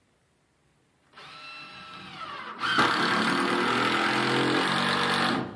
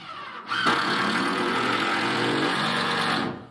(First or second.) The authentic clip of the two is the first